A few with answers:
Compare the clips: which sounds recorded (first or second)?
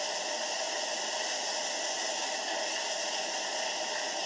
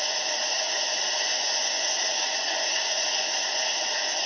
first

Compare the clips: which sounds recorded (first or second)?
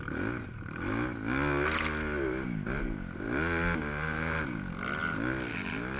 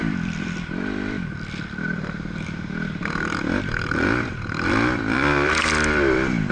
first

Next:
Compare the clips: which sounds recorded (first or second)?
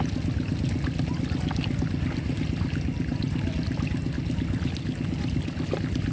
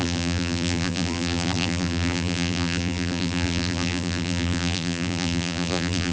first